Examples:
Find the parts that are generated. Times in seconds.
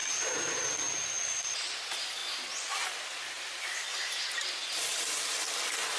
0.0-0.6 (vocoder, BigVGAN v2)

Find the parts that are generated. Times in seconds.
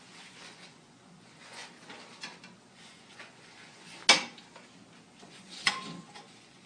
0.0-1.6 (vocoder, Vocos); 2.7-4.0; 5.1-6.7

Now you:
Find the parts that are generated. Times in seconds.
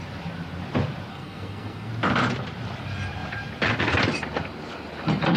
1.1-1.9 (codec, SNAC)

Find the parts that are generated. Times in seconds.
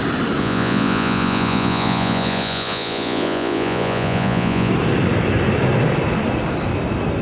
0.4-4.7 (vocoder, Vocos)